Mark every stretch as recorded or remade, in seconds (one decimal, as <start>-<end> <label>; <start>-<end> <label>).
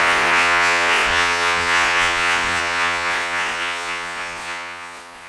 0.0-5.3 remade